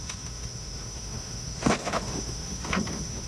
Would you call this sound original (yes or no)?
no